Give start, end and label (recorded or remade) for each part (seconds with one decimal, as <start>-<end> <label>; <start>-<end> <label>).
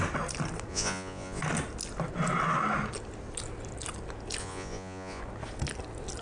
0.0-0.7 recorded; 0.7-1.4 remade; 1.4-4.4 recorded; 4.4-5.2 remade; 5.2-6.2 recorded